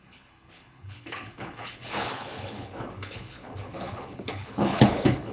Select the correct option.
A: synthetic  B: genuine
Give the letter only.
A